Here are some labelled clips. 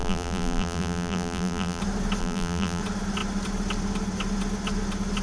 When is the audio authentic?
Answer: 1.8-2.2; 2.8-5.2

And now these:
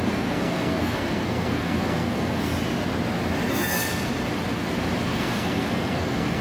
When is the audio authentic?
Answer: 2.5-3.5; 4.1-5.0

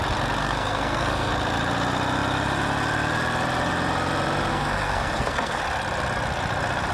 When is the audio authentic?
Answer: 0.0-0.4; 1.3-4.5; 5.6-6.9

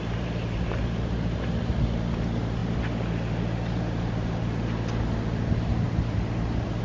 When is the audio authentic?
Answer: 0.0-0.8; 1.5-6.8

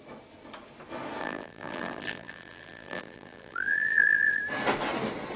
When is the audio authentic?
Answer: 0.0-1.2; 4.4-5.4

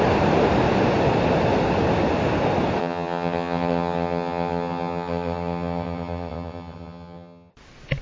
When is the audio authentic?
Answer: 0.0-2.8; 7.5-8.0